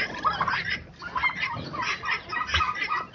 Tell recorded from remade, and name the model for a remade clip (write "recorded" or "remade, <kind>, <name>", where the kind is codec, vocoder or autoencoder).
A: recorded